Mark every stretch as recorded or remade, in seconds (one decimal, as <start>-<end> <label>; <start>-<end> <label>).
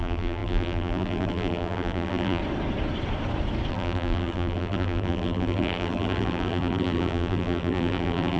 0.0-2.4 remade; 2.4-3.7 recorded; 3.7-8.4 remade